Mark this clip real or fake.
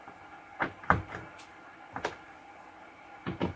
real